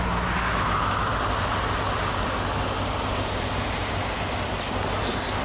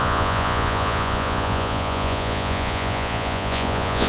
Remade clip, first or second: second